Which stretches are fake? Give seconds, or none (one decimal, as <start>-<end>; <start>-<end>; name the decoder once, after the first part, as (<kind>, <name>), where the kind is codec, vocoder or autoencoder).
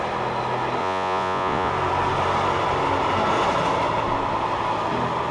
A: 0.8-1.7 (vocoder, Vocos)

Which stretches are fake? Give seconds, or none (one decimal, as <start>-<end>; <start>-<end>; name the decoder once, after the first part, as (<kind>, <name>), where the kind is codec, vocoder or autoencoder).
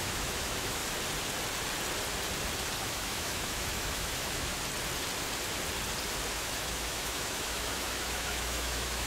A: 0.0-0.8 (autoencoder, DAC-VAE); 2.8-4.5; 6.3-9.1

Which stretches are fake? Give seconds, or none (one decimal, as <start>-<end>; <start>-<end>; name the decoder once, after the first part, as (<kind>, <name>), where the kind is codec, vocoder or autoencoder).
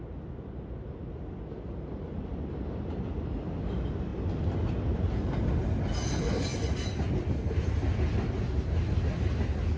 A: none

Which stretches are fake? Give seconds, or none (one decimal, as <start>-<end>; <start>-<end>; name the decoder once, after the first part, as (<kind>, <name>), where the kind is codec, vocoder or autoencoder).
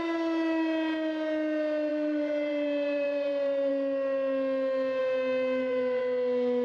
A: 1.9-3.7 (vocoder, BigVGAN v2); 5.0-6.0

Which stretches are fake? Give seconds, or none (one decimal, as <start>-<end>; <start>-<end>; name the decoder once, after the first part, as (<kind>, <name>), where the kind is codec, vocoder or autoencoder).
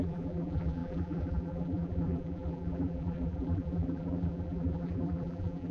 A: 0.0-5.7 (vocoder, BigVGAN v2)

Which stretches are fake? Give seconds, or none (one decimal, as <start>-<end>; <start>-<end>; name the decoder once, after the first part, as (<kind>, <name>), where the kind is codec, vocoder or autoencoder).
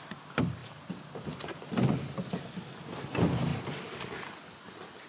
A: none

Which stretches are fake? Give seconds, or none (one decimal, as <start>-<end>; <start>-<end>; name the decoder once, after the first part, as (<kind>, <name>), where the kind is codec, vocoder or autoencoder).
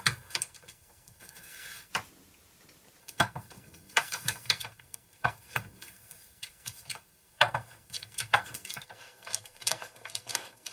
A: 0.0-1.9 (codec, SNAC); 3.0-10.7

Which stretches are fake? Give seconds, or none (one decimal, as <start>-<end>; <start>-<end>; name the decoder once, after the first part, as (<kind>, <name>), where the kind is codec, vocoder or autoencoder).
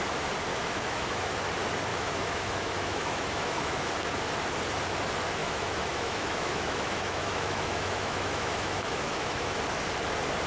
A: 0.5-1.3 (autoencoder, DAC-VAE); 1.9-3.9; 5.4-9.6